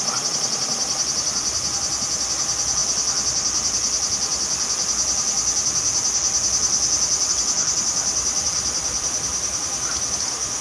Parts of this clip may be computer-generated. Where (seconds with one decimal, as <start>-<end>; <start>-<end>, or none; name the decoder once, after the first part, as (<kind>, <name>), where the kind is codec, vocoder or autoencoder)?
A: none